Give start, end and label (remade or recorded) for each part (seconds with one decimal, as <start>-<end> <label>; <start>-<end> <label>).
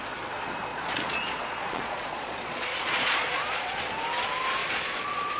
0.0-0.7 recorded; 0.7-3.9 remade; 3.9-4.6 recorded; 4.6-5.4 remade